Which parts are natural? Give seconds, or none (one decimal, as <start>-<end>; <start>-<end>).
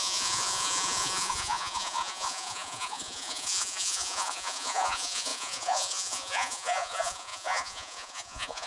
none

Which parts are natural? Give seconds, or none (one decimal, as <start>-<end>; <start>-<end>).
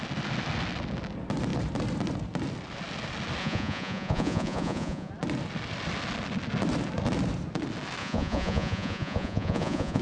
0.0-3.4; 5.1-8.0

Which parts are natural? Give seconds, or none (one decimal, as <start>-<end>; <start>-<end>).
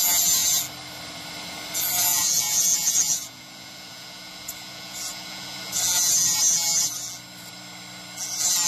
0.0-2.1; 5.8-8.7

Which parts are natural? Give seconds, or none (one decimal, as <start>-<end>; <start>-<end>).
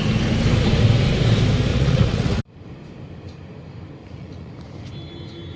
0.0-1.7; 2.4-4.0; 4.5-5.6